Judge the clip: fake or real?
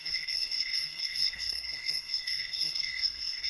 fake